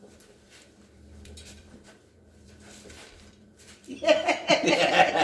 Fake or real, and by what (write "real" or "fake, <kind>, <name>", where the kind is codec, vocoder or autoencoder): fake, vocoder, BigVGAN v2